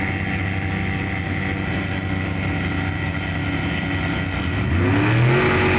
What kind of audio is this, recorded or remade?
recorded